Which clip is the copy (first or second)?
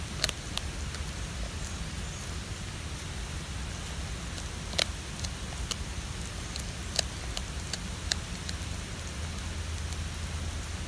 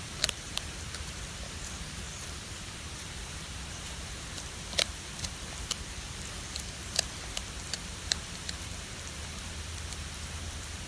second